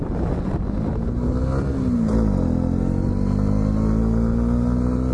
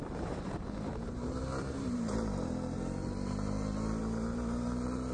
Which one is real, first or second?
first